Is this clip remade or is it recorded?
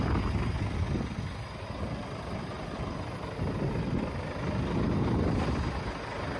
recorded